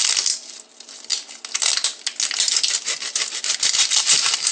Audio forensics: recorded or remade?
recorded